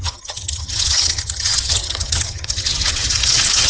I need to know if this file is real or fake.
fake